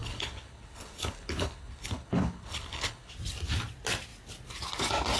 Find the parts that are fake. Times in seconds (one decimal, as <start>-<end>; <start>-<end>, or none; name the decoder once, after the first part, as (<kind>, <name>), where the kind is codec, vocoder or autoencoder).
0.0-3.1 (codec, HILCodec)

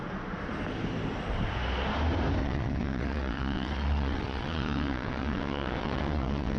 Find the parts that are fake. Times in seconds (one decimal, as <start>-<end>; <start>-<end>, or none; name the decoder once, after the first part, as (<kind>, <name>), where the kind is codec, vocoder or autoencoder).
2.4-6.6 (vocoder, WaveNeXt)

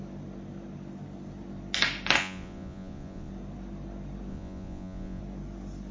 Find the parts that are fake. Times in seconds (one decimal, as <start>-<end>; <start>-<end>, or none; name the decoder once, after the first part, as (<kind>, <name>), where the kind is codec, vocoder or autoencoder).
2.2-3.3 (vocoder, Vocos); 4.3-5.2

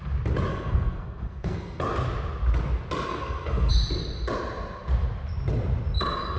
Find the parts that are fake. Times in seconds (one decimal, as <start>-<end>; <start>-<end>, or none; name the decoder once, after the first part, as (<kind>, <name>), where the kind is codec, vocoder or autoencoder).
0.5-1.8 (codec, SNAC); 3.1-3.7

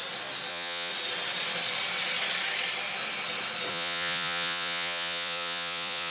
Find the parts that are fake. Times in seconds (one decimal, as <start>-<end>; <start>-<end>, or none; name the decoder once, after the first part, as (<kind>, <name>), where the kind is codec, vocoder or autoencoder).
0.5-0.9 (vocoder, Vocos); 3.7-6.1